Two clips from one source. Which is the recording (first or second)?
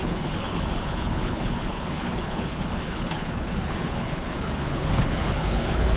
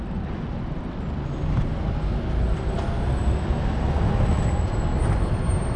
second